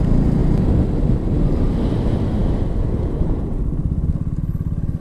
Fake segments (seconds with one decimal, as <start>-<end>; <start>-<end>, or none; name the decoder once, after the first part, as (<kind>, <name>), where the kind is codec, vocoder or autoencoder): none